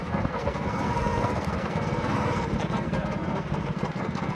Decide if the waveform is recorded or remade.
remade